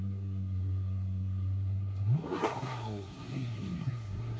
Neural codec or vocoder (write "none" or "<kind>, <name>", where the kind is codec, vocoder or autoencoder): codec, SNAC